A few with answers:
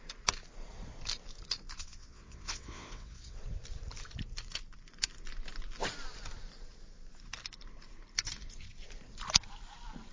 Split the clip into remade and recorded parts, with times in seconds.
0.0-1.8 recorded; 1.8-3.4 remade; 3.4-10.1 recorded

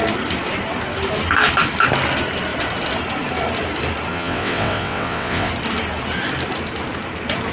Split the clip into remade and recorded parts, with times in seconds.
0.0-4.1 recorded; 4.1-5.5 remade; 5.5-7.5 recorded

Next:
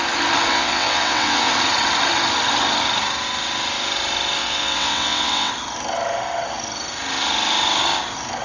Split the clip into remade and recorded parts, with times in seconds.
0.0-0.5 recorded; 0.5-1.5 remade; 1.5-4.4 recorded; 4.4-5.5 remade; 5.5-8.4 recorded

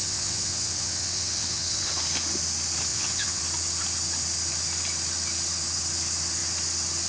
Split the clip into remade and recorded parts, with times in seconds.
0.0-1.9 remade; 1.9-2.9 recorded; 2.9-3.4 remade; 3.4-7.1 recorded